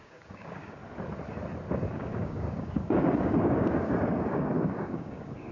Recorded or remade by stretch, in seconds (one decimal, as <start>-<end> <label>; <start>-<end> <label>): 0.0-0.8 remade; 0.8-1.9 recorded; 1.9-5.5 remade